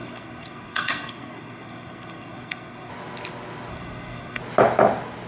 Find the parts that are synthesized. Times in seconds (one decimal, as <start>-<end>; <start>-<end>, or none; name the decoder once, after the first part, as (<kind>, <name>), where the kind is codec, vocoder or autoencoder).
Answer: 0.0-2.9 (codec, SNAC); 3.7-4.4